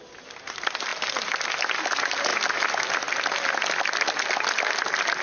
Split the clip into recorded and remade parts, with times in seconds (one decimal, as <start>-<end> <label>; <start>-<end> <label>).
0.0-5.2 recorded